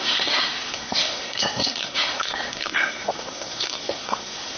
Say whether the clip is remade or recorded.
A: remade